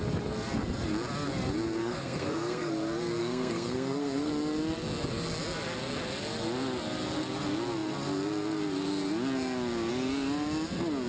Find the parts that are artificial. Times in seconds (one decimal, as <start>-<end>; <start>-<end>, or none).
1.8-2.7; 3.2-4.3